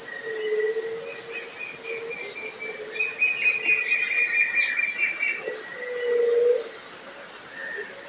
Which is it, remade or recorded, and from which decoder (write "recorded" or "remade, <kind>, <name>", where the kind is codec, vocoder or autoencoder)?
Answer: recorded